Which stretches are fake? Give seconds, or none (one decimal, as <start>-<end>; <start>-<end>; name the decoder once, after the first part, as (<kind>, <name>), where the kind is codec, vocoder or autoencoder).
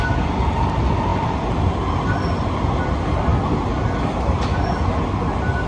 none